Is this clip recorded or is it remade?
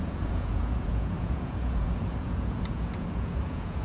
remade